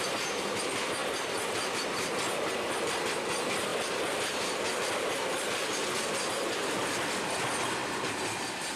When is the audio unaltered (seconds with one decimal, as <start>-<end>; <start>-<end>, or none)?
0.0-8.8